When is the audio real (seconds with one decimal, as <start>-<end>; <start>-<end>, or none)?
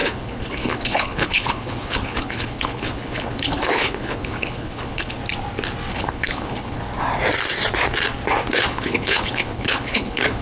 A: 5.2-5.9; 6.8-8.5